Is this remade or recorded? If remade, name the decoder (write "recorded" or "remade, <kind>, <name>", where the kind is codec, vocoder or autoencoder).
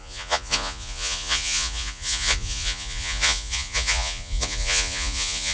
remade, vocoder, Vocos